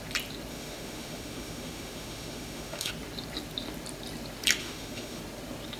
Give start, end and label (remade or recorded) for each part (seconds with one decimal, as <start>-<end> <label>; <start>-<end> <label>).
0.0-0.5 recorded; 0.5-2.9 remade; 2.9-4.6 recorded; 4.6-5.2 remade; 5.2-5.8 recorded